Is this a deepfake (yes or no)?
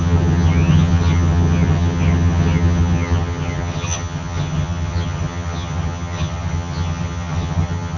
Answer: yes